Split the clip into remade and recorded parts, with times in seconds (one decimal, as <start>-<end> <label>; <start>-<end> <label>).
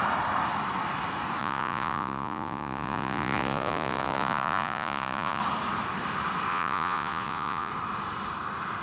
0.0-1.4 recorded; 1.4-5.4 remade; 5.4-6.5 recorded; 6.5-7.7 remade; 7.7-8.8 recorded